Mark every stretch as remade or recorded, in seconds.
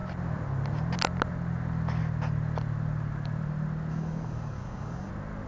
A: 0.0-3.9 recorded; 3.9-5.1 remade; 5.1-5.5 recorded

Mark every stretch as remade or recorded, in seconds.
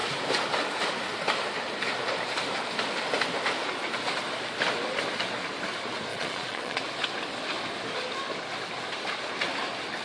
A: 0.0-6.1 recorded; 6.1-6.8 remade; 6.8-10.0 recorded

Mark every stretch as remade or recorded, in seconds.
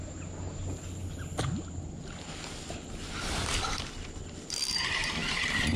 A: 0.0-5.8 recorded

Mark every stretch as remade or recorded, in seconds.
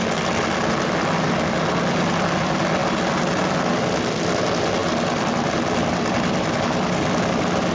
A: 0.0-7.7 recorded